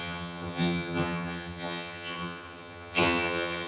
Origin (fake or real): fake